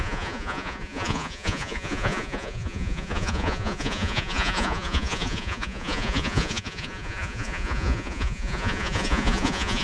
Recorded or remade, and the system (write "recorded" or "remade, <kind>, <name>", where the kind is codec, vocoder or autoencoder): remade, vocoder, Vocos